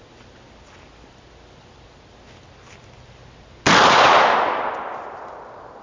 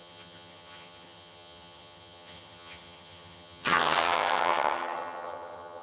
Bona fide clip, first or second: first